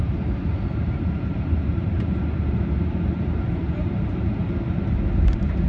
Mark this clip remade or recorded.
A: remade